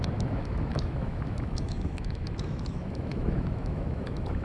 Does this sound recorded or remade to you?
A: remade